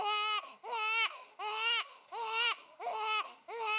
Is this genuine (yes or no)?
no